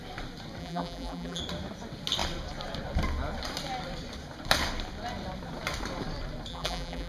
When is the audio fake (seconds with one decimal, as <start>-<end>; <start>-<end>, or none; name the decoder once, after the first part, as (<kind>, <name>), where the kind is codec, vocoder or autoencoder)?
0.6-1.4 (vocoder, BigVGAN v2); 6.5-7.1